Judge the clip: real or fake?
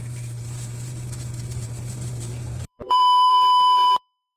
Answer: fake